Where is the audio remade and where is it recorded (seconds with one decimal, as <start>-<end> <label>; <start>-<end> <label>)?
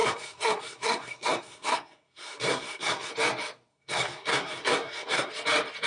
0.0-3.1 remade; 3.1-3.7 recorded; 3.7-5.3 remade; 5.3-5.9 recorded